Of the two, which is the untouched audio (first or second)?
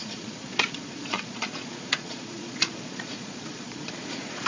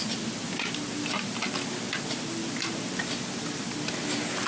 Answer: second